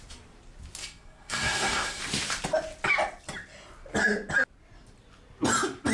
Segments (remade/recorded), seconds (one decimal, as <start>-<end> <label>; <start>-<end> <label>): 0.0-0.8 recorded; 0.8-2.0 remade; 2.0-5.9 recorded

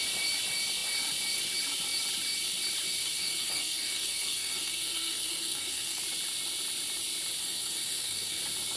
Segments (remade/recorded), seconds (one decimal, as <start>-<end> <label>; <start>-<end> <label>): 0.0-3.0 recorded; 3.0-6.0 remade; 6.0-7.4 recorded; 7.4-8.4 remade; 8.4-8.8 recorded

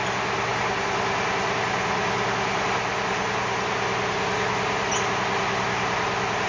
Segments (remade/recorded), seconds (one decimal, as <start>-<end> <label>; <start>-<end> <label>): 0.0-6.5 recorded

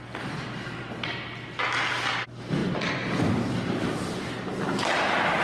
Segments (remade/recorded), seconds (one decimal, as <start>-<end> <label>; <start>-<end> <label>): 0.0-5.4 recorded

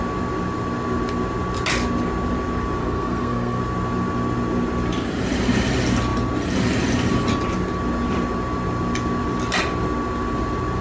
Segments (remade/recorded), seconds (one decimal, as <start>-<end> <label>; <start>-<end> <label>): 0.0-2.8 recorded; 2.8-3.6 remade; 3.6-10.8 recorded

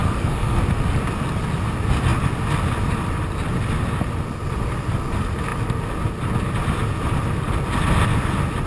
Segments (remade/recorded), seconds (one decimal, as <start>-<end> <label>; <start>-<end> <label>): 0.0-0.6 remade; 0.6-8.7 recorded

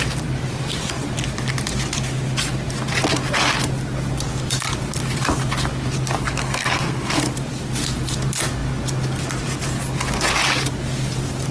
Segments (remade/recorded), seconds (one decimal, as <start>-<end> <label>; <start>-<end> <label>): 0.0-6.2 recorded; 6.2-7.3 remade; 7.3-11.5 recorded

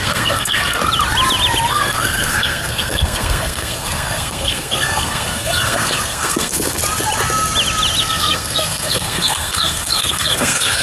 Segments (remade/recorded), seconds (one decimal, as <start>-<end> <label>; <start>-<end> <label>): 0.0-0.8 remade; 0.8-1.7 recorded; 1.7-6.8 remade; 6.8-8.0 recorded; 8.0-10.8 remade